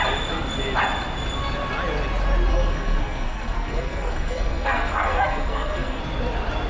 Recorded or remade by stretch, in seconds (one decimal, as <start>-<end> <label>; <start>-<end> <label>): 0.0-2.5 recorded; 2.5-6.0 remade; 6.0-6.7 recorded